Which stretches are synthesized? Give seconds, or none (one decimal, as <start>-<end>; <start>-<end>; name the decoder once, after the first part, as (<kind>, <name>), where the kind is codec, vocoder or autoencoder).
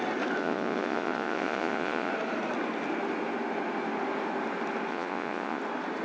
0.4-2.1 (vocoder, Vocos); 4.9-5.6